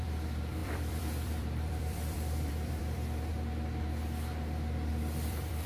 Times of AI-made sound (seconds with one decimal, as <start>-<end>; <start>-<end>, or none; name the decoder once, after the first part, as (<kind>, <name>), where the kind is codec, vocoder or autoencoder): 0.0-3.3 (vocoder, BigVGAN v2); 4.9-5.7